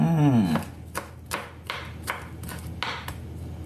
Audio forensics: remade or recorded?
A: recorded